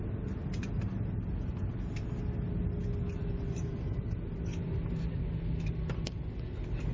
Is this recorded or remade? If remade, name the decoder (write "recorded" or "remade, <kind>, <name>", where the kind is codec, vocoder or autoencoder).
recorded